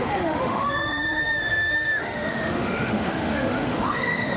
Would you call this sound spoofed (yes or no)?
yes